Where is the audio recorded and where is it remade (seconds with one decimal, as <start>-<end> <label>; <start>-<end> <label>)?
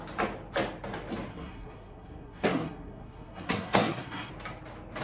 0.0-1.3 recorded; 1.3-4.3 remade; 4.3-5.0 recorded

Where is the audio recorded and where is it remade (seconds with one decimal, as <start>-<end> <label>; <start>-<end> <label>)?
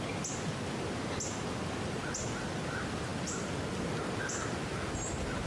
0.0-5.5 recorded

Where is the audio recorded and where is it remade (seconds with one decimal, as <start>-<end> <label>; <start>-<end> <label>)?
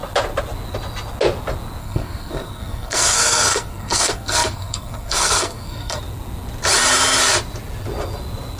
0.0-1.8 recorded; 1.8-6.0 remade; 6.0-8.6 recorded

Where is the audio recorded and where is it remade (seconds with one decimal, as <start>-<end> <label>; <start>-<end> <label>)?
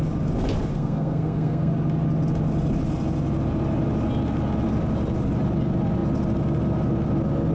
0.0-0.7 recorded; 0.7-1.7 remade; 1.7-7.5 recorded